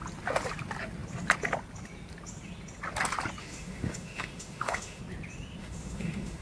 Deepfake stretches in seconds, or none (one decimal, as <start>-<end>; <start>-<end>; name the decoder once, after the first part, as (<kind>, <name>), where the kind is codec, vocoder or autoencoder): 3.4-5.0 (autoencoder, DAC-VAE); 5.6-6.4